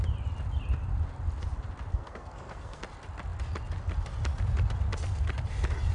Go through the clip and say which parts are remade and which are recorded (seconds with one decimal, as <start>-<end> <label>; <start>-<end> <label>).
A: 0.0-1.9 recorded; 1.9-2.8 remade; 2.8-5.9 recorded